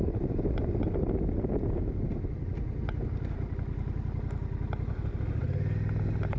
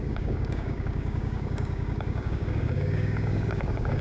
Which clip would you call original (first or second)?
first